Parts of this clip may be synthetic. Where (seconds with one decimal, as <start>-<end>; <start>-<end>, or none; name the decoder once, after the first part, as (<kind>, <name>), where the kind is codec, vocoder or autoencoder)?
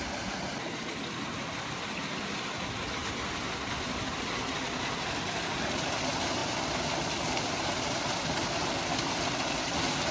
none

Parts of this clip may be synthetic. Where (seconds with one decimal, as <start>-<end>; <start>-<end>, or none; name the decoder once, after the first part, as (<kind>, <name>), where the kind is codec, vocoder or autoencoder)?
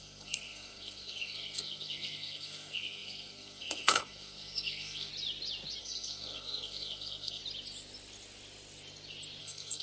0.0-5.1 (codec, SNAC); 5.8-7.4; 9.4-9.8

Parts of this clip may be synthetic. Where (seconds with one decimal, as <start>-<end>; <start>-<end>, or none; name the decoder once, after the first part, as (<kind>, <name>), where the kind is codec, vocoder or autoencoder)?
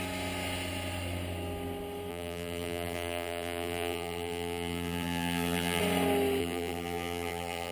2.1-5.8 (vocoder, BigVGAN v2); 6.4-7.7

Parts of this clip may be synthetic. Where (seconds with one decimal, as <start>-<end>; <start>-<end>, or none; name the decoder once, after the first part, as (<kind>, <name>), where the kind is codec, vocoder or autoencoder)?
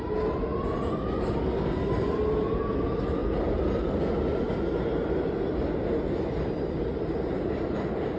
none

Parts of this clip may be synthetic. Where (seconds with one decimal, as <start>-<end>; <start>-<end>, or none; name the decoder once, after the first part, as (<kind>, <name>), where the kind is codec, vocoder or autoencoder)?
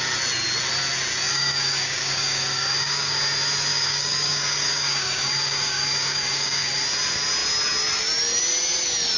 1.3-3.2 (codec, DAC); 3.7-6.7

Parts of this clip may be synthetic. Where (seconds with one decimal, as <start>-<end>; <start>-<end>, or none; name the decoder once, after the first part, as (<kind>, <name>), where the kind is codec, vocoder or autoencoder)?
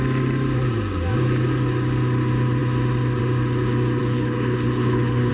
4.0-5.3 (codec, HILCodec)